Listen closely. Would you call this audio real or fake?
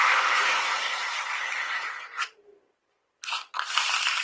real